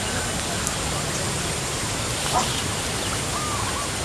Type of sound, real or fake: real